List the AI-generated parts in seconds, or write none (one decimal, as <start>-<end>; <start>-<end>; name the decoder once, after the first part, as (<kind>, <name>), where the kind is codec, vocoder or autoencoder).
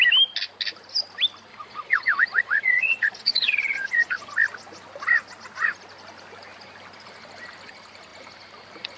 1.5-4.3 (vocoder, Vocos)